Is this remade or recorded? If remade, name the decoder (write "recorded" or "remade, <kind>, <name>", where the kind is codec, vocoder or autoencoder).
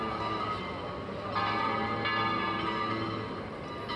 recorded